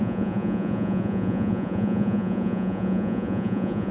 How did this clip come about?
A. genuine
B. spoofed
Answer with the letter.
B